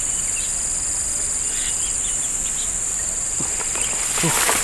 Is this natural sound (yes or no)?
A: yes